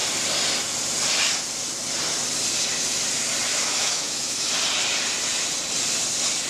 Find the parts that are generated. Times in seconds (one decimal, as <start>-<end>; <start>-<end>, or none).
3.5-4.5